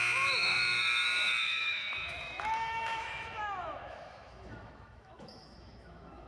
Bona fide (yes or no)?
no